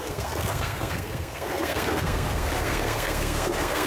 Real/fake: fake